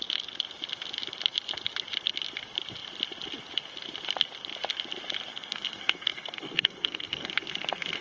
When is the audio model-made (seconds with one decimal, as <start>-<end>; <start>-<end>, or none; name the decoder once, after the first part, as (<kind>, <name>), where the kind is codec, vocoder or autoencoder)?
5.3-7.3 (codec, SNAC)